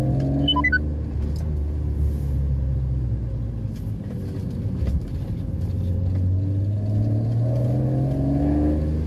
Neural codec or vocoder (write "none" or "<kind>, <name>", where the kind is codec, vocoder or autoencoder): none